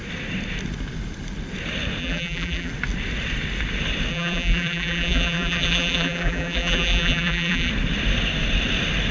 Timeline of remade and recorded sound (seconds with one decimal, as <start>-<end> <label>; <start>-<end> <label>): 0.0-2.0 recorded; 2.0-2.7 remade; 2.7-4.1 recorded; 4.1-7.7 remade; 7.7-9.1 recorded